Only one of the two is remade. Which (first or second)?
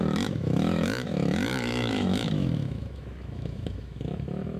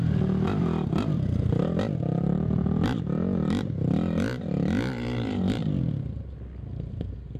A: first